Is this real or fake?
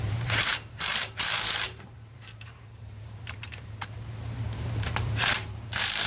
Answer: fake